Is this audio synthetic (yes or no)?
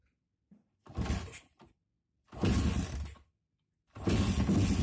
no